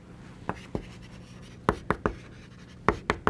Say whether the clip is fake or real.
real